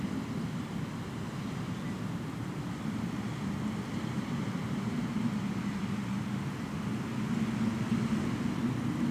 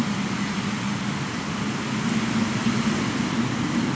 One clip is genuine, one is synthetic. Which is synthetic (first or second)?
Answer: second